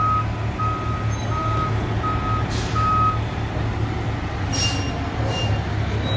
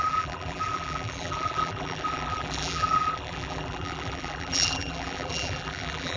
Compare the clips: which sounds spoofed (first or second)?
second